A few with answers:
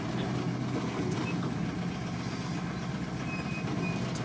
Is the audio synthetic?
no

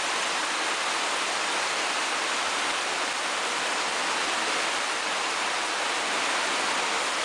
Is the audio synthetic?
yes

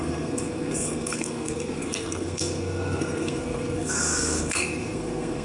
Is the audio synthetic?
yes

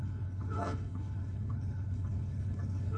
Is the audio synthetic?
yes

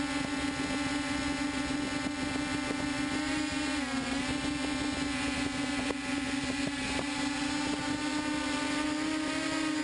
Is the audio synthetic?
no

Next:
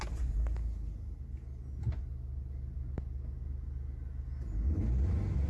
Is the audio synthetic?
no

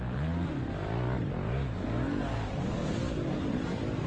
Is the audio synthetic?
no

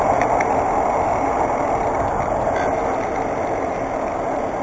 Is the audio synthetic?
no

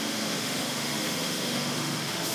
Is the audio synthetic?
yes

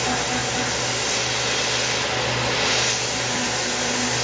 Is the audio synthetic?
no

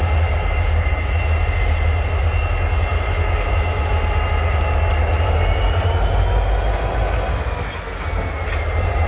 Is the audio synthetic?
no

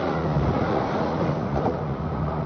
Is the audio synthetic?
yes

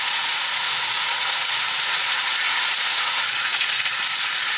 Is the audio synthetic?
yes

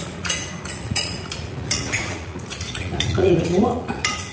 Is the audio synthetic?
yes